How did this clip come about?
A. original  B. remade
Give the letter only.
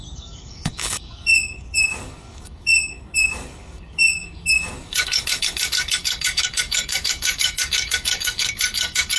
B